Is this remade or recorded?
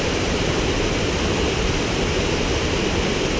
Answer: recorded